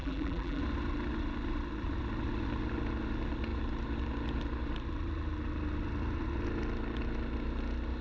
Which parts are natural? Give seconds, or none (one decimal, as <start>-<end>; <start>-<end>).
0.6-8.0